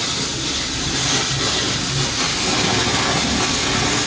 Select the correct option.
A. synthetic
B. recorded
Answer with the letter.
B